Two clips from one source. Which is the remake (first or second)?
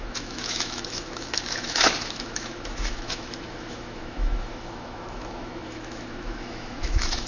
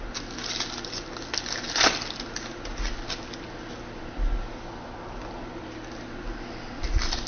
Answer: first